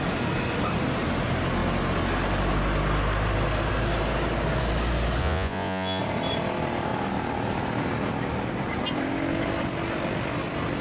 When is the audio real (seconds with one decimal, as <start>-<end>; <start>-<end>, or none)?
0.0-5.2; 6.0-10.8